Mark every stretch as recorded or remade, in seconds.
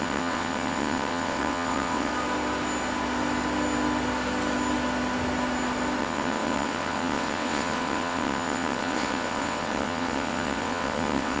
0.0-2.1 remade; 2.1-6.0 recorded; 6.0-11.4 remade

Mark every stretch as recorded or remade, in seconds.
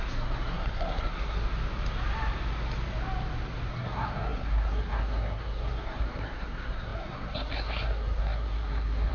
0.0-1.4 remade; 1.4-3.7 recorded; 3.7-9.1 remade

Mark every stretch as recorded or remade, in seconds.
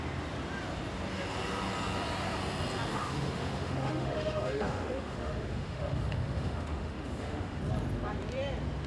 0.0-2.9 recorded; 2.9-7.6 remade; 7.6-8.9 recorded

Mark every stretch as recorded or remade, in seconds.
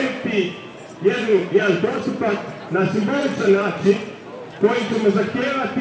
0.0-1.3 recorded; 1.3-2.0 remade; 2.0-3.2 recorded; 3.2-4.0 remade; 4.0-5.8 recorded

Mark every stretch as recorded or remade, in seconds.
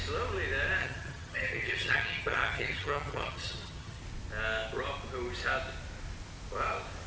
0.0-0.8 recorded; 0.8-4.0 remade; 4.0-7.1 recorded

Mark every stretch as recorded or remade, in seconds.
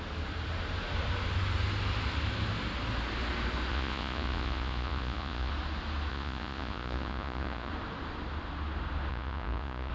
0.0-3.7 recorded; 3.7-5.5 remade; 5.5-6.1 recorded; 6.1-7.7 remade; 7.7-9.1 recorded; 9.1-9.9 remade